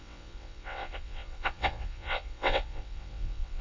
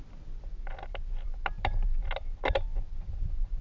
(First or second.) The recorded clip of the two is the second